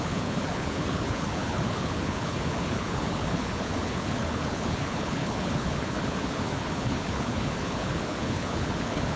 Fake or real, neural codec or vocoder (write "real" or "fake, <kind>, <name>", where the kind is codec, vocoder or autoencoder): fake, codec, HILCodec